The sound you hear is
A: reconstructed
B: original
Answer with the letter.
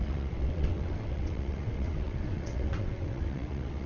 A